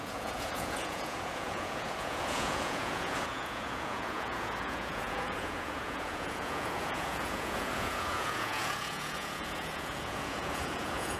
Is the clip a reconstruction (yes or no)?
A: yes